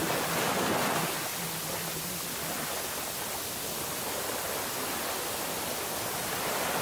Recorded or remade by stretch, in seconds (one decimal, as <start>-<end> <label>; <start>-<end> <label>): 0.0-6.8 recorded